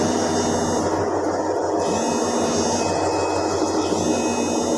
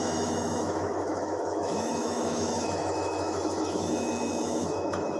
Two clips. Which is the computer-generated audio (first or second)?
second